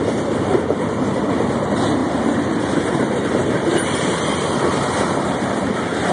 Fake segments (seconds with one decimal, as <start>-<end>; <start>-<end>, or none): 0.5-1.3; 2.0-6.1